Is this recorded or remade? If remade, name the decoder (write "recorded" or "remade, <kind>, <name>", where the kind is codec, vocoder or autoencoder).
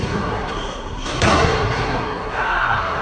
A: remade, codec, SNAC